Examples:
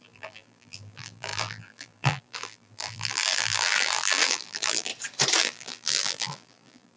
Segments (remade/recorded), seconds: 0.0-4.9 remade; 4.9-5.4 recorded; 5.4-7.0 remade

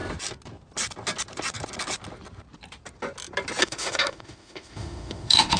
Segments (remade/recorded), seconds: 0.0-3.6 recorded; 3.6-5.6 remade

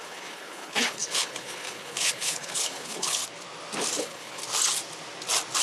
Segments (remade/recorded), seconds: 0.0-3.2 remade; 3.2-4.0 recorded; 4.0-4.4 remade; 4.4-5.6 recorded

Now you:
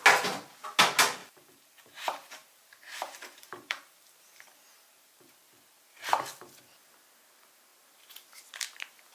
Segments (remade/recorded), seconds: 0.0-1.2 recorded; 1.2-5.3 remade; 5.3-9.1 recorded

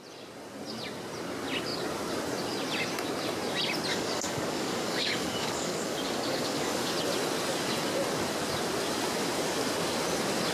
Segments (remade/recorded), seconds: 0.0-3.9 recorded; 3.9-6.9 remade; 6.9-10.5 recorded

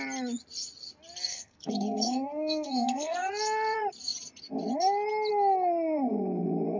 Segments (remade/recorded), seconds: 0.0-1.3 recorded; 1.3-3.3 remade; 3.3-6.8 recorded